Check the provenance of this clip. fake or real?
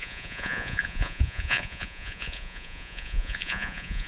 fake